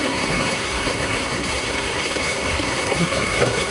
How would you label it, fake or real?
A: fake